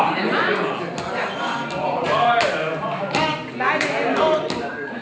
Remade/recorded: recorded